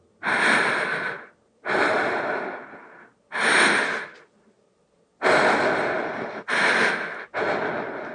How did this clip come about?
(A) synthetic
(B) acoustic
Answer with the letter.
B